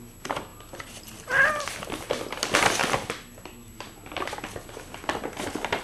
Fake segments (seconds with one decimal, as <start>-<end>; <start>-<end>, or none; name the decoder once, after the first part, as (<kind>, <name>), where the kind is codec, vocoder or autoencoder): 0.5-2.1 (vocoder, BigVGAN v2); 2.8-5.2